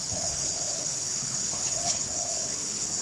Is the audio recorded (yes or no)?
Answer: no